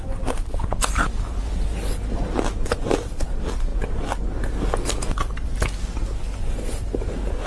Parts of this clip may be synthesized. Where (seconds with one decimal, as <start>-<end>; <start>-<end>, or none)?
none